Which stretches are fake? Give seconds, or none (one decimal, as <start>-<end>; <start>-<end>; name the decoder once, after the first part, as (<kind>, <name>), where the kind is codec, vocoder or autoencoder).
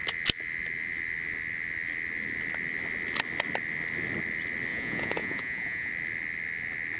4.7-5.9 (vocoder, Vocos)